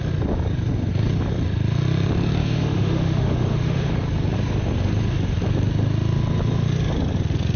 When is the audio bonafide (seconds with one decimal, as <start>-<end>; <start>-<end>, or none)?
0.0-2.4; 3.9-7.6